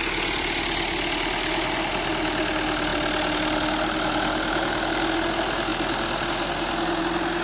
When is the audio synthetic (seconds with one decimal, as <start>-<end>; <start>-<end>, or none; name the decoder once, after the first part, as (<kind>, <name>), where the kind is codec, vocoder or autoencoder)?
none

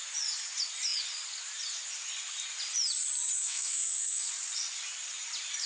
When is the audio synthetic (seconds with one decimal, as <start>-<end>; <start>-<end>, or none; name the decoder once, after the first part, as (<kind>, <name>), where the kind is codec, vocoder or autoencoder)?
3.4-4.3 (codec, SNAC)

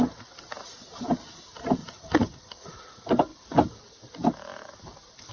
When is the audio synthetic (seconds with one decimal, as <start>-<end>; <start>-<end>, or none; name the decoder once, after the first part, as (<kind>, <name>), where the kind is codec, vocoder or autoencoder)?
1.8-2.8 (vocoder, Vocos)

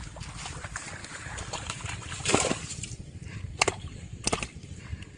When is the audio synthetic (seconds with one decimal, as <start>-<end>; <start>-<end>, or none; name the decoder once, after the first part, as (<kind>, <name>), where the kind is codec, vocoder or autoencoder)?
1.0-3.5 (vocoder, BigVGAN v2)

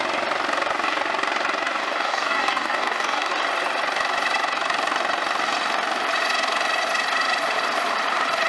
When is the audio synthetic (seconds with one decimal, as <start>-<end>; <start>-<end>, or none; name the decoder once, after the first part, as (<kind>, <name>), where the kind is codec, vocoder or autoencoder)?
1.8-3.3 (codec, DAC)

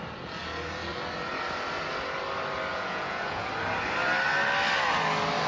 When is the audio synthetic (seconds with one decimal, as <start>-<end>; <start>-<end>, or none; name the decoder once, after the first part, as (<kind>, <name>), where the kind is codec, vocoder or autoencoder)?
2.7-3.5 (vocoder, Vocos)

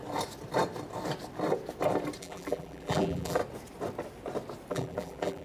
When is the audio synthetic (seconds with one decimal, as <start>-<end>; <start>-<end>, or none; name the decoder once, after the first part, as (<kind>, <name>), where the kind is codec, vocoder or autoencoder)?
2.2-3.4 (vocoder, BigVGAN v2); 4.7-5.4